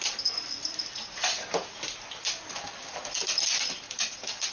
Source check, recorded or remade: recorded